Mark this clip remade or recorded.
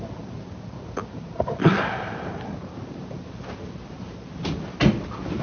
recorded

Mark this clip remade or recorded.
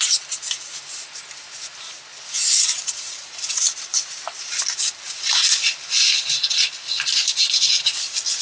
recorded